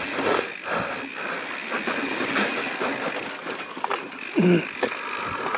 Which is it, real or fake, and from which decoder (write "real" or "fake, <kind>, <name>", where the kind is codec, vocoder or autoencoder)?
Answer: real